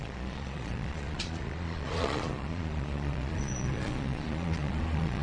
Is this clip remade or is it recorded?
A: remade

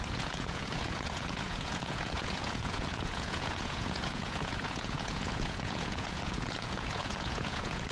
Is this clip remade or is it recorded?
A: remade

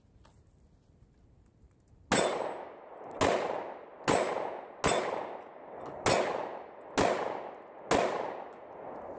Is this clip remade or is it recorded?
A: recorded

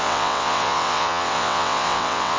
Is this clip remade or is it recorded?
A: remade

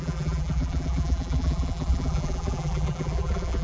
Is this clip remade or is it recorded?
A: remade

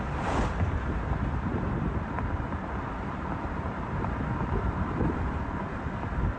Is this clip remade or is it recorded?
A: remade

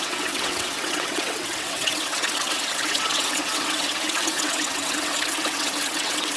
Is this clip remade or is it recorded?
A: remade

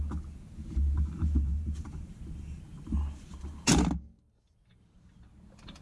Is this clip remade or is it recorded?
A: recorded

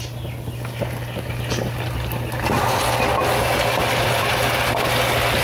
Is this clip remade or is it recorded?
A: recorded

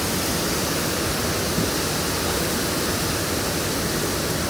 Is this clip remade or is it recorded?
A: recorded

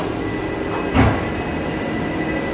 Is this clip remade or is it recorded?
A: recorded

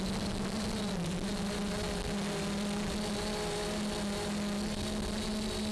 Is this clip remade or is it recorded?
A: recorded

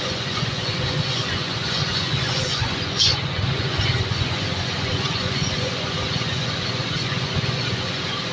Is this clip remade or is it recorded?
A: remade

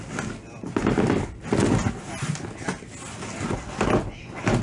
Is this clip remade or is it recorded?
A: recorded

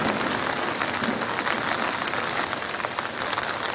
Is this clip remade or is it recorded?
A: recorded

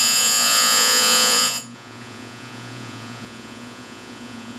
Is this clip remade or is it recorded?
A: remade